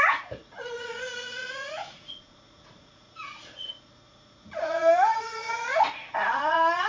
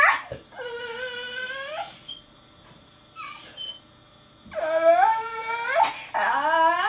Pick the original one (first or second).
second